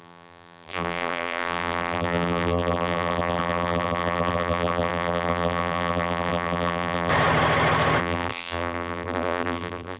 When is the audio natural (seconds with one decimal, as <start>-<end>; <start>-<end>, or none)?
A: 7.1-8.0